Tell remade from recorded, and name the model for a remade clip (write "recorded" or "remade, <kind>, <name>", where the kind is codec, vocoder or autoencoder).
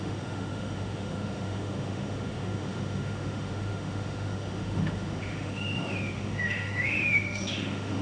remade, autoencoder, DAC-VAE